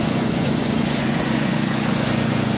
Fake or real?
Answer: fake